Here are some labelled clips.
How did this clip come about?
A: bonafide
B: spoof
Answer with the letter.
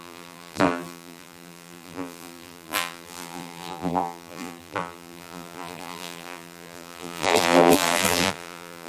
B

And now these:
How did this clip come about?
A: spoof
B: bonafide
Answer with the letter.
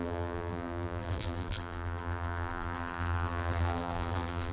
A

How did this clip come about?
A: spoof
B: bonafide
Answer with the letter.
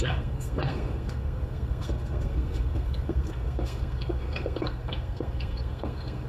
A